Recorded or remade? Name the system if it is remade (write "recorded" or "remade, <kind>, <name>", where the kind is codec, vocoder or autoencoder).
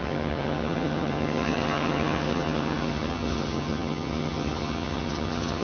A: remade, vocoder, HiFi-GAN